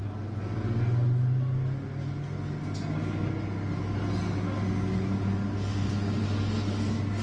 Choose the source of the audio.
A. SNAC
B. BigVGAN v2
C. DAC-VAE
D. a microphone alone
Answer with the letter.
D